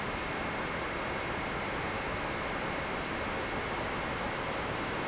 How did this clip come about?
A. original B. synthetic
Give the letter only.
A